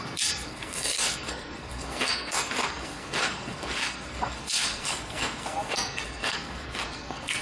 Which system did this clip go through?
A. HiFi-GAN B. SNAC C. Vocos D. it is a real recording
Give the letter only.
B